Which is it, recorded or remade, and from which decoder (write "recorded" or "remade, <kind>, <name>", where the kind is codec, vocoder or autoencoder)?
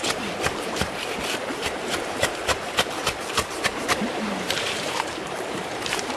remade, vocoder, BigVGAN v2